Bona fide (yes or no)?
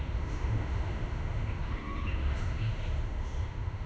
no